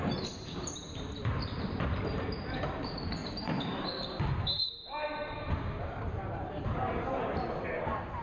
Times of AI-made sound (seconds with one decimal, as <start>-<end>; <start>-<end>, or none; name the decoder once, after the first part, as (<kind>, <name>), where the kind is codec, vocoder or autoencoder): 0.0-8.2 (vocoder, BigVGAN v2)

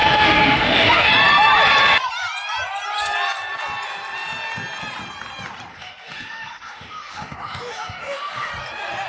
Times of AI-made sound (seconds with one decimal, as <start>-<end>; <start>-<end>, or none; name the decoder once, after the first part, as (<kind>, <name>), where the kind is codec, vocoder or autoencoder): 0.0-1.1 (autoencoder, DAC-VAE); 5.7-8.5

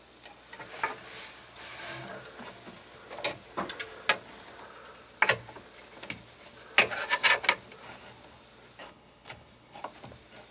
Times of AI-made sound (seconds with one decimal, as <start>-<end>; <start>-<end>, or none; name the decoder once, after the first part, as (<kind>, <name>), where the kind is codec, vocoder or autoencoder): 8.8-9.8 (codec, HILCodec)

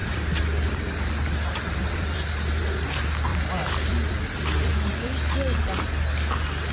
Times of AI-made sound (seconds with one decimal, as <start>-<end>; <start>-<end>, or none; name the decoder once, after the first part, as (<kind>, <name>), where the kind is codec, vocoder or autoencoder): 0.0-2.6 (vocoder, BigVGAN v2); 3.3-4.7

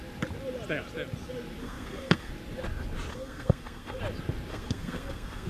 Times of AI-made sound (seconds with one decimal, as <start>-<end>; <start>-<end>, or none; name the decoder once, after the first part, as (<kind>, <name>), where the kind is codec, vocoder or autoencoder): 1.6-2.3 (codec, SNAC); 3.1-4.0; 4.5-5.5

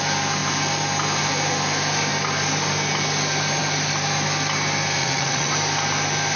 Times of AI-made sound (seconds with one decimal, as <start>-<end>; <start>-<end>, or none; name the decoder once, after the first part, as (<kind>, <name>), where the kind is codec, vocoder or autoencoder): 5.0-5.5 (vocoder, WaveNeXt)